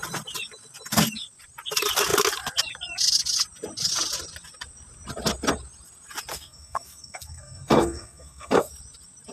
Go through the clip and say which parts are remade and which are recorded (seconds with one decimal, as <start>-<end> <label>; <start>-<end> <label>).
0.0-6.3 recorded; 6.3-8.7 remade; 8.7-9.3 recorded